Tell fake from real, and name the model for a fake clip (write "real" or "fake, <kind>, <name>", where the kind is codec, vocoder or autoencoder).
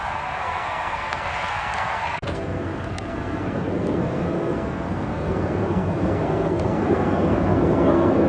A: fake, codec, SNAC